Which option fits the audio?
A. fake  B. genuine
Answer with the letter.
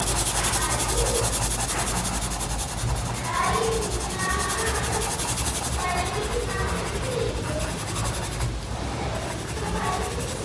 B